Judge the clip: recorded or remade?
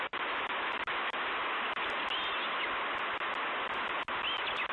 recorded